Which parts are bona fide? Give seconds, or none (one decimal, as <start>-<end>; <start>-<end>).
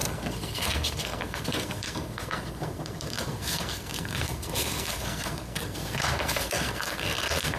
none